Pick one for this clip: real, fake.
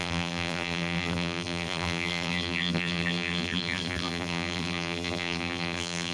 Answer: fake